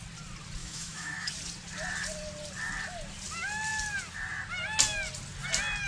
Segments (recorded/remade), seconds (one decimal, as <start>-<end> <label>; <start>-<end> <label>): 0.0-0.6 recorded; 0.6-1.3 remade; 1.3-5.9 recorded